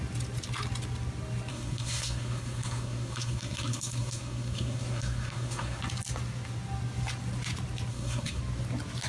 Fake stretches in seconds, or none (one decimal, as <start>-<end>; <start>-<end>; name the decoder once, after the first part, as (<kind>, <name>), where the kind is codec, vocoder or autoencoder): 1.5-5.8 (codec, SNAC); 7.9-8.4